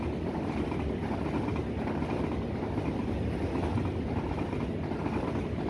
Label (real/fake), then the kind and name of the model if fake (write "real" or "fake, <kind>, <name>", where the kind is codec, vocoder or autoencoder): real